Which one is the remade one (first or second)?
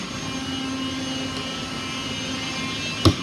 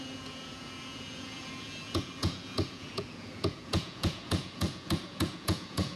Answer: second